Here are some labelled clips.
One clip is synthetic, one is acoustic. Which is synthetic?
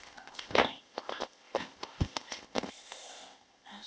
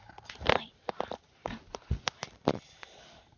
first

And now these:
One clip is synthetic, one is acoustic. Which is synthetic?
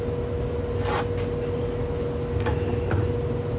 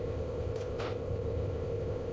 second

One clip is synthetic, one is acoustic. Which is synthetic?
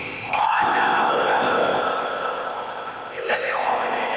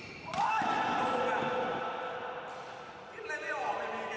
first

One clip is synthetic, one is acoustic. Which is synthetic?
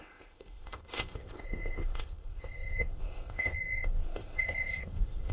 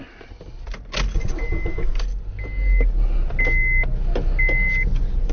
first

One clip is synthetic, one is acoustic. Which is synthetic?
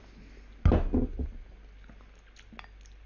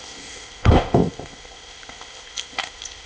second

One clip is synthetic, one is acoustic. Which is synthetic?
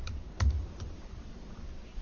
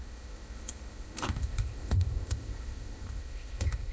second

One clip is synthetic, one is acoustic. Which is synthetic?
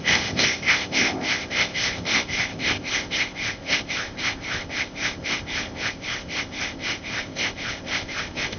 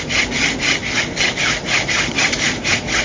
first